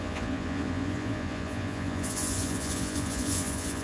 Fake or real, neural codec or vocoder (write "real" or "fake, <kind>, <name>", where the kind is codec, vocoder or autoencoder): fake, vocoder, Vocos